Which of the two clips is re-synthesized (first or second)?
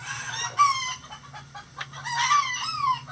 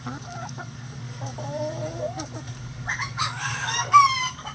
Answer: second